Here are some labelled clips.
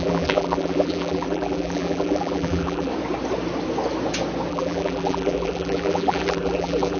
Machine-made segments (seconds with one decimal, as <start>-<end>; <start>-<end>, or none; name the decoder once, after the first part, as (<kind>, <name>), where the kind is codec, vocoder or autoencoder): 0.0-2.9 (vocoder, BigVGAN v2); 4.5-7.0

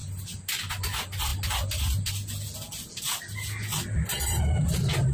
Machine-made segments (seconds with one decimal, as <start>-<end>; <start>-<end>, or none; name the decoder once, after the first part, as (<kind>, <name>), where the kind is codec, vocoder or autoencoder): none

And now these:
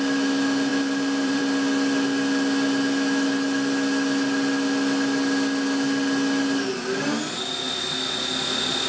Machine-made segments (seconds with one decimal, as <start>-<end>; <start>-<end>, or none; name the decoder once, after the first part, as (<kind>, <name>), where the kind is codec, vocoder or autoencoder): 0.7-1.4 (vocoder, BigVGAN v2)

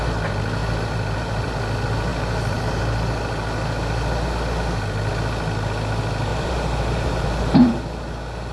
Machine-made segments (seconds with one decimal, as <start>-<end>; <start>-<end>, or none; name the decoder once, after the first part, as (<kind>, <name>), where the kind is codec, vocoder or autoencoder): 0.6-1.5 (vocoder, BigVGAN v2); 6.3-7.8

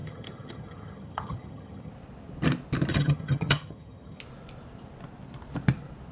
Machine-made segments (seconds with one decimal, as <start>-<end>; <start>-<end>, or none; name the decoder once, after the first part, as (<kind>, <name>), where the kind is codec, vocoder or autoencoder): 0.0-1.9 (vocoder, HiFi-GAN); 2.9-4.2

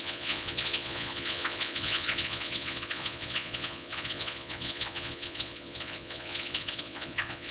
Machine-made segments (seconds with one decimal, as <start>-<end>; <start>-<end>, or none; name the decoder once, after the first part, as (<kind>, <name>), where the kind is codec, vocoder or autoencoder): 0.0-7.5 (vocoder, Vocos)

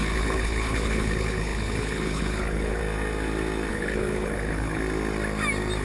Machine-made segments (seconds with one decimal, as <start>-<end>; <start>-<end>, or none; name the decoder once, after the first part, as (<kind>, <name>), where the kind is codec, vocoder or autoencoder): 0.0-2.8 (codec, HILCodec); 3.7-4.8